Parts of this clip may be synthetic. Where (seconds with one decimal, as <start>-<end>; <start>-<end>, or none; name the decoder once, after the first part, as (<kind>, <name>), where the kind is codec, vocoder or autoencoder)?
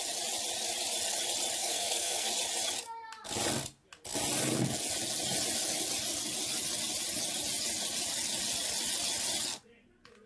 1.6-2.3 (codec, SNAC)